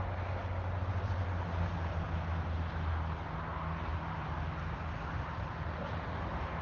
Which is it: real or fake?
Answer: real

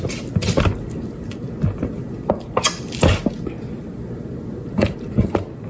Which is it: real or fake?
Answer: real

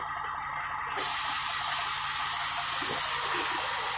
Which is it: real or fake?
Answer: real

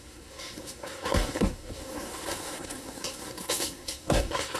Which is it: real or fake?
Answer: fake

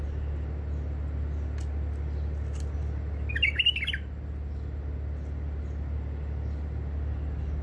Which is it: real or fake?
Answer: real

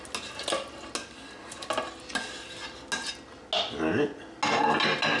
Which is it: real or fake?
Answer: real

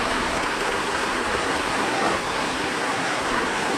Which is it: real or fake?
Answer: fake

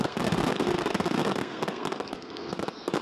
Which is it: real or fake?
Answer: fake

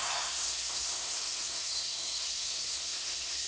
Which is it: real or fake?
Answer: fake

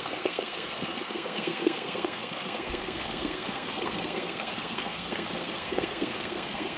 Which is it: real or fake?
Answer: fake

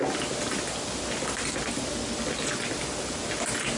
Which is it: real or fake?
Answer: real